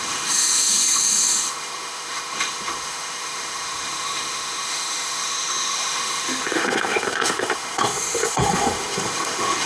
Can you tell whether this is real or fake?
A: fake